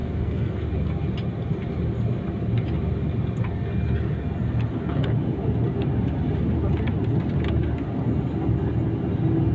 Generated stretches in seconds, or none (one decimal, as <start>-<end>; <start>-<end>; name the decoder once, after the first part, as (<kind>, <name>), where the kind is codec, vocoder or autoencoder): 0.0-0.7 (codec, SNAC)